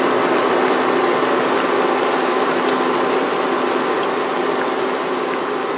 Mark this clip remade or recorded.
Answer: recorded